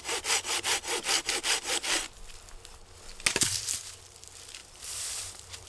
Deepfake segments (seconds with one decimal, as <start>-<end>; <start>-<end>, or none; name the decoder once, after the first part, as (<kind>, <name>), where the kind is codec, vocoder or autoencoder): 4.6-5.2 (vocoder, BigVGAN v2)